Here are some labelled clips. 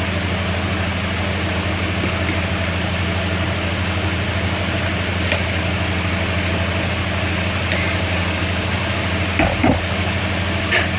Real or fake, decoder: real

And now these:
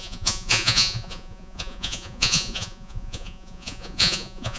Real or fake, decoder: fake, vocoder, Vocos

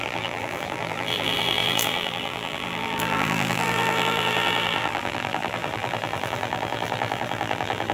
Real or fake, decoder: fake, vocoder, BigVGAN v2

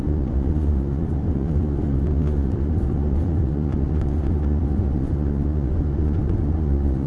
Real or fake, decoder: fake, vocoder, Vocos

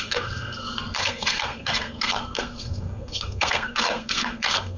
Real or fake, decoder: fake, codec, SNAC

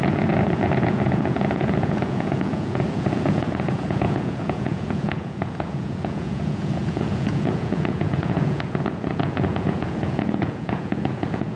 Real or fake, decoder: fake, vocoder, Vocos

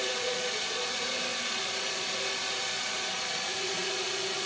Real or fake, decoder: fake, vocoder, Vocos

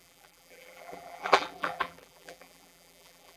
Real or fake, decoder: fake, vocoder, BigVGAN v2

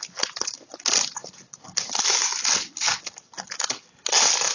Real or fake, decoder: real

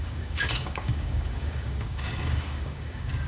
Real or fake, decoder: fake, codec, DAC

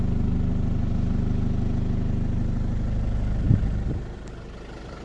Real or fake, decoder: real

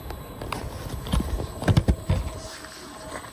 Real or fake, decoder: real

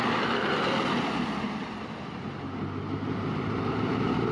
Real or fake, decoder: real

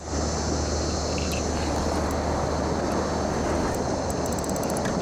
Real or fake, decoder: real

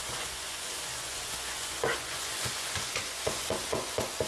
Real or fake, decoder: fake, vocoder, Vocos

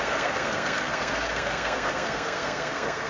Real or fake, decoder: fake, codec, SNAC